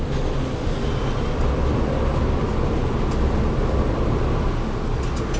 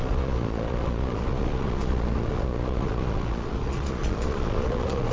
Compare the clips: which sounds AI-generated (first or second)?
second